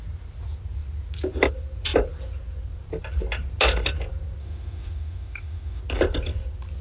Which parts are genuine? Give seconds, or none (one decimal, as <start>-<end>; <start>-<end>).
0.0-4.4; 5.8-6.8